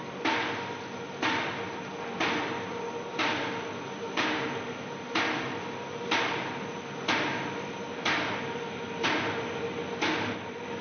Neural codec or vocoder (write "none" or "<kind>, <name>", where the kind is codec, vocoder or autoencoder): vocoder, BigVGAN v2